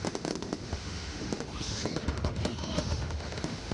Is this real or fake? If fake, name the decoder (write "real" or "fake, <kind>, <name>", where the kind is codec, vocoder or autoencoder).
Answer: fake, autoencoder, DAC-VAE